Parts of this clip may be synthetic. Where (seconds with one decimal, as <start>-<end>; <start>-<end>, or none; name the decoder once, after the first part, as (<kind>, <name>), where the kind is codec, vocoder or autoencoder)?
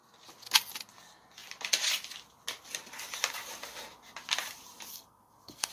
4.9-5.7 (codec, SNAC)